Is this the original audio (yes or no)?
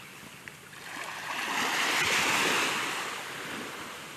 yes